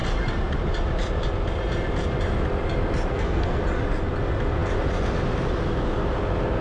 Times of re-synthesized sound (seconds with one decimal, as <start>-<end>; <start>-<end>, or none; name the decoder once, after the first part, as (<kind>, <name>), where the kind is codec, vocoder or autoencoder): 3.1-3.6 (codec, SNAC)